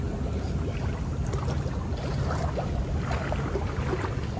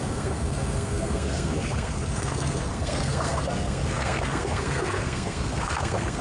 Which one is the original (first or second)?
first